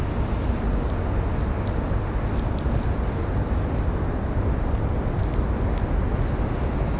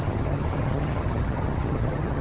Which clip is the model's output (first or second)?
second